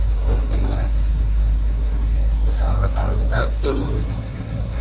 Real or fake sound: fake